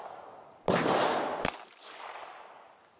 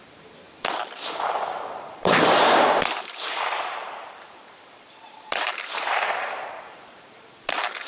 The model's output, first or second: second